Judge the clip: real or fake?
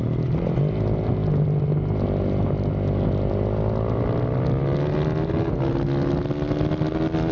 real